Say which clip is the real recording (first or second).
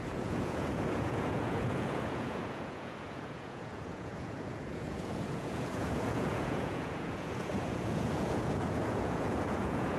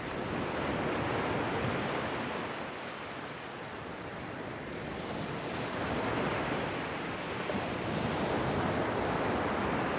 second